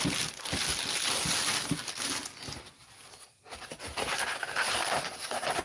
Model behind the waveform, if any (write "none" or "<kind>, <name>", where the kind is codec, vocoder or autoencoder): none